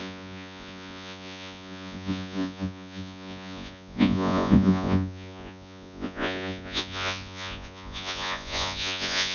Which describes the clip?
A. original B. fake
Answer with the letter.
B